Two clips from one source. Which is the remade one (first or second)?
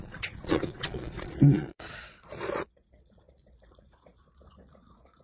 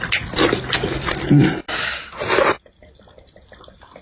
first